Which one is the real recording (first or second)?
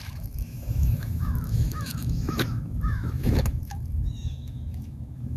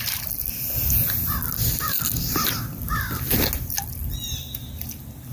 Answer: second